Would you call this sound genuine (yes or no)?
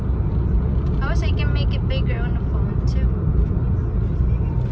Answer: yes